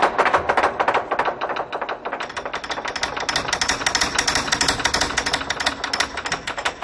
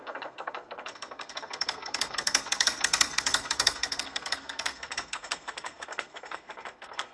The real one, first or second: first